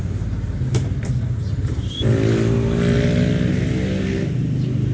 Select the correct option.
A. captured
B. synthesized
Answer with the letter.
A